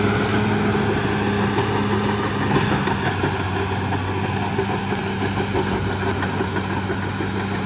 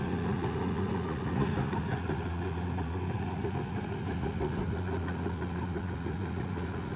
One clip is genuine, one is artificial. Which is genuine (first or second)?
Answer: first